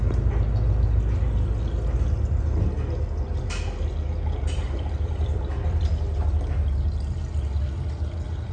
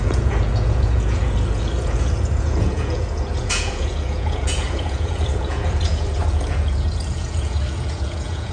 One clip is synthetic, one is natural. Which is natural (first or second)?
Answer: first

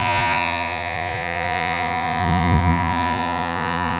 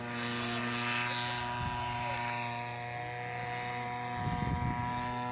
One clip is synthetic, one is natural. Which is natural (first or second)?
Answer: second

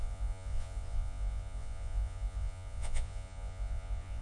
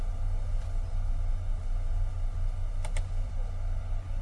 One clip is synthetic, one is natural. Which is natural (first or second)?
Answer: second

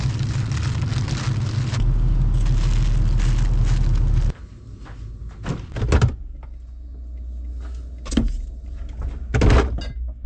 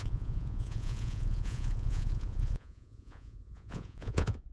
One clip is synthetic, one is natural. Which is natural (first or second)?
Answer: first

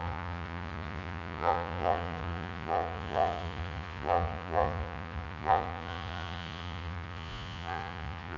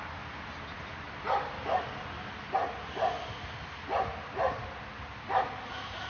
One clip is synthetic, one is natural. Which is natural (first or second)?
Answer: second